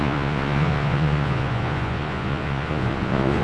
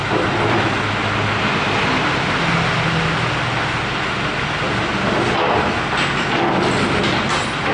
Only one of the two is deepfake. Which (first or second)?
first